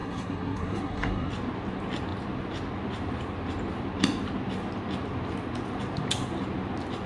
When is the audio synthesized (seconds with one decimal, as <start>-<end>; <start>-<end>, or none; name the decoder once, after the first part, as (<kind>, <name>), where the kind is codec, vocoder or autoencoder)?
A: 0.0-1.3 (codec, SNAC)